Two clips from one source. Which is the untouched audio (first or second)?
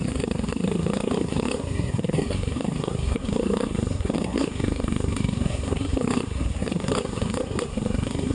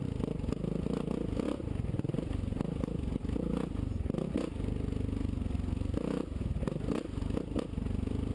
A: second